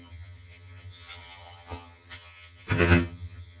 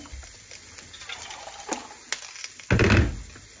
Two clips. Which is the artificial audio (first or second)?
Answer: first